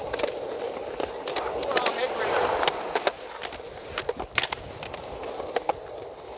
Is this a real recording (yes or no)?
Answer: yes